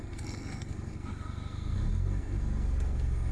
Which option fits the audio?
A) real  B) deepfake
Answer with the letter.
B